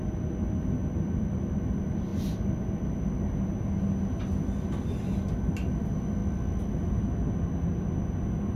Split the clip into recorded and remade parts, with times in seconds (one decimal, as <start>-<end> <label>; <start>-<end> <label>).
0.0-8.6 recorded